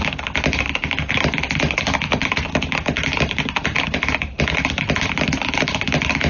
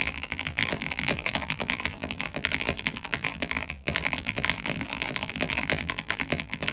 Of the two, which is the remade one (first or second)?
second